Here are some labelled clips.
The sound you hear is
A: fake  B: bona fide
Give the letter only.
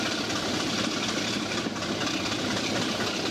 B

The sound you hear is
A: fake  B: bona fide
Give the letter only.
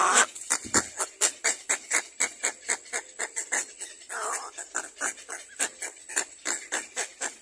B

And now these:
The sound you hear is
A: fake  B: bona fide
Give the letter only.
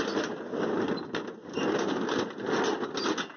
B